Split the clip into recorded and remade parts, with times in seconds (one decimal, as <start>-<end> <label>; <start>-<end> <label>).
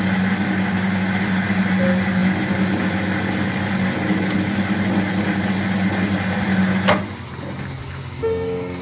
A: 0.0-7.8 recorded; 7.8-8.8 remade